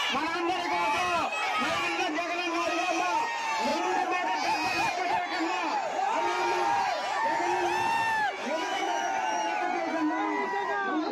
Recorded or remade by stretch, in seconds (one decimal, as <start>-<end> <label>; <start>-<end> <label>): 0.0-8.4 recorded; 8.4-9.0 remade; 9.0-11.1 recorded